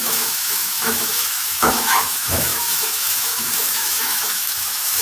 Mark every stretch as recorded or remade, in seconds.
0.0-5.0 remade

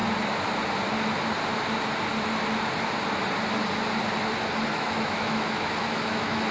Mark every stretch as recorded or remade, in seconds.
0.0-4.7 recorded; 4.7-6.5 remade